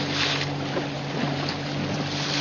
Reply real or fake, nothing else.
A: real